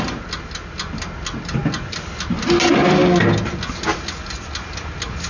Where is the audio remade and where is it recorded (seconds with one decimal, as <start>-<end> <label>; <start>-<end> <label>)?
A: 0.0-5.3 recorded

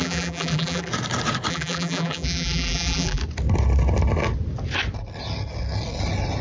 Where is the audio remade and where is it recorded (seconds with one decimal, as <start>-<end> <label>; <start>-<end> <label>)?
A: 0.0-0.9 remade; 0.9-1.5 recorded; 1.5-3.2 remade; 3.2-6.4 recorded

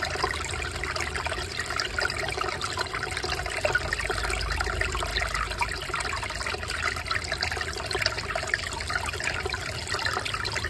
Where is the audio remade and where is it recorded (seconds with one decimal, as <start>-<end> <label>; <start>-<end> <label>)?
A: 0.0-10.7 recorded

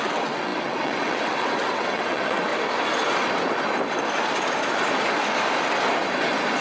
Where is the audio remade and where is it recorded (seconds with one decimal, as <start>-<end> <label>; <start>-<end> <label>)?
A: 0.0-2.5 remade; 2.5-6.6 recorded

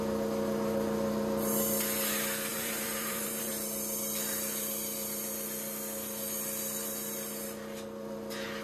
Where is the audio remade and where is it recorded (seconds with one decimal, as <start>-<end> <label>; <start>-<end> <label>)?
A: 0.0-2.5 recorded; 2.5-3.5 remade; 3.5-8.6 recorded

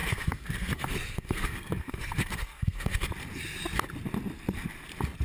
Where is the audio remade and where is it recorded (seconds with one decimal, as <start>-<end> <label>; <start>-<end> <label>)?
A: 0.0-3.1 remade; 3.1-5.2 recorded

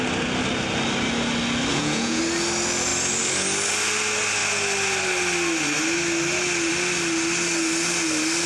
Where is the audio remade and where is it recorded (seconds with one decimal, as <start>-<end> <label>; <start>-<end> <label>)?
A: 0.0-1.7 recorded; 1.7-2.2 remade; 2.2-8.5 recorded